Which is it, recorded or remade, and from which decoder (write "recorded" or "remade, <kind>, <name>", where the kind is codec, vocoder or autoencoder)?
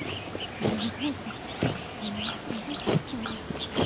recorded